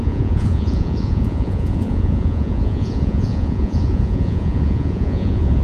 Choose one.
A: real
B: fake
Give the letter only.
B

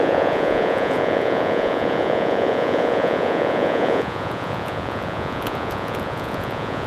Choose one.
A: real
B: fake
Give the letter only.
B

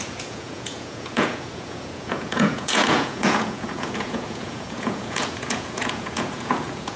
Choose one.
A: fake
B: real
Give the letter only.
A